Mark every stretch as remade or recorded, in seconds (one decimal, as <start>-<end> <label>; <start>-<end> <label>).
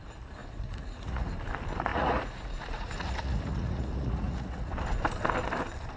0.0-0.4 recorded; 0.4-1.3 remade; 1.3-1.9 recorded; 1.9-4.7 remade; 4.7-6.0 recorded